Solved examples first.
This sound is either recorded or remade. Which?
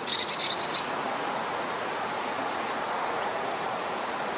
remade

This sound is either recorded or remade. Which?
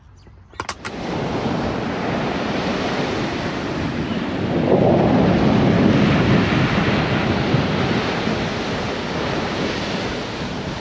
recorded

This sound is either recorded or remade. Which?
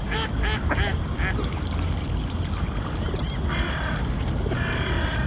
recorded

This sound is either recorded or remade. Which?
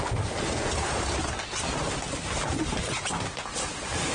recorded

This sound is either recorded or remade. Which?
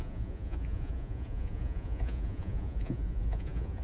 remade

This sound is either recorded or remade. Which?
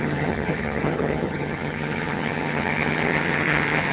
remade